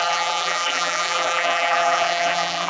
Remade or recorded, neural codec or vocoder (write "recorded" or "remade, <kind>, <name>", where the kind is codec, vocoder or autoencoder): remade, vocoder, BigVGAN v2